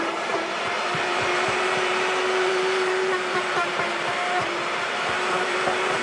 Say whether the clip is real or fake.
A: fake